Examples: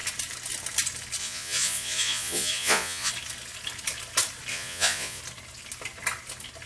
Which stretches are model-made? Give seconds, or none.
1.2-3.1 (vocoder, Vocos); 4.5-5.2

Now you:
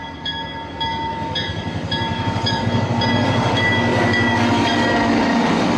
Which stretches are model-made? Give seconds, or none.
0.0-5.8 (codec, DAC)